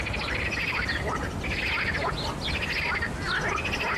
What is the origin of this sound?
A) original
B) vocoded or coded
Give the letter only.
A